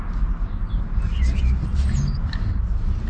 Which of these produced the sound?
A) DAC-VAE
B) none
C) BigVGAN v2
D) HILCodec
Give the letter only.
B